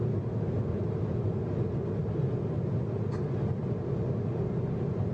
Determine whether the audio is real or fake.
real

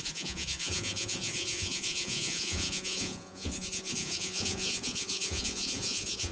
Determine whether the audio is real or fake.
fake